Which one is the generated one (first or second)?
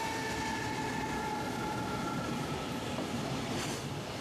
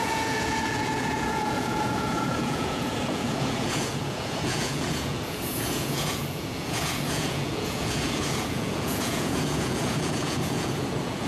second